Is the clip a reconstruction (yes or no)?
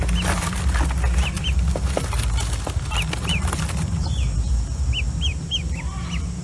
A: no